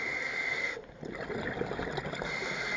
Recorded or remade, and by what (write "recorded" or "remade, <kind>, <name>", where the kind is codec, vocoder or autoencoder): recorded